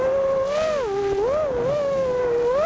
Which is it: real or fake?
real